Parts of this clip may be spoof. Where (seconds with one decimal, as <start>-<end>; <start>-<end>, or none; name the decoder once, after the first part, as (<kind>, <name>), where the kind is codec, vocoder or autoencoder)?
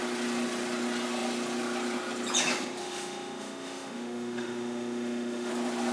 2.8-5.5 (autoencoder, DAC-VAE)